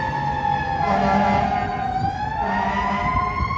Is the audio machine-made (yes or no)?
no